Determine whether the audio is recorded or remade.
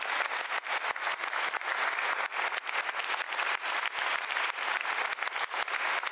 recorded